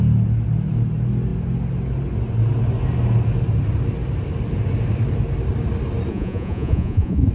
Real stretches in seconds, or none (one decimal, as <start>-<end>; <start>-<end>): 0.0-6.1